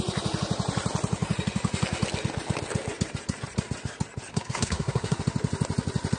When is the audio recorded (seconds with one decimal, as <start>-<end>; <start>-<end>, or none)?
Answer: 0.0-4.3; 5.2-6.2